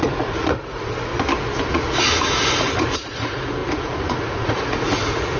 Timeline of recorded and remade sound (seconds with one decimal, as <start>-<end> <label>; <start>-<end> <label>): 0.0-1.1 remade; 1.1-1.7 recorded; 1.7-5.4 remade